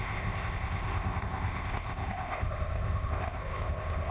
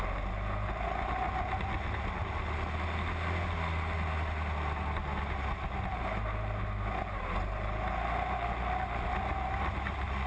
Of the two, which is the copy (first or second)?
first